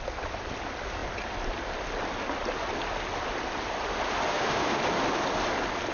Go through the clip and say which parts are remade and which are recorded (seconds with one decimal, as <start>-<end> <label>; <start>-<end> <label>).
0.0-4.3 recorded; 4.3-4.8 remade; 4.8-5.9 recorded